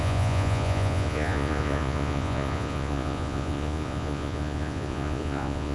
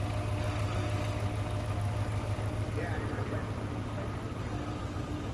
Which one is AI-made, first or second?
first